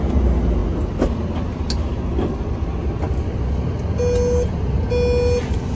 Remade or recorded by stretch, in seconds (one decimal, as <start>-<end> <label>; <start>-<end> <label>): 0.0-5.7 recorded